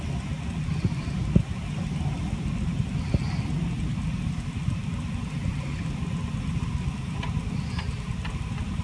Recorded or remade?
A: recorded